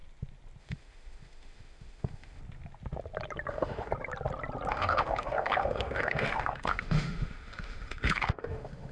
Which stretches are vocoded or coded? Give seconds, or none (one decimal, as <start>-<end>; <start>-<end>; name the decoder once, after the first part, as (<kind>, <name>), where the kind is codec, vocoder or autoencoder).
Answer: 0.6-2.4 (autoencoder, DAC-VAE); 3.5-3.9; 4.7-8.9